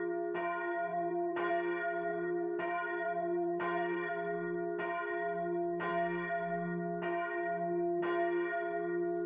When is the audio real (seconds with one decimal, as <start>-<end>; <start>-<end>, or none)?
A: 0.0-0.9; 1.5-2.1; 4.1-9.3